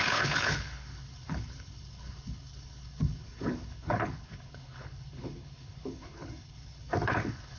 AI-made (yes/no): yes